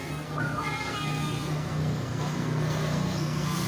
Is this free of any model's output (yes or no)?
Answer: no